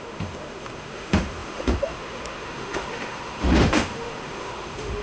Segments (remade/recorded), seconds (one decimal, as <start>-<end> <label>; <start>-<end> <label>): 0.0-5.0 remade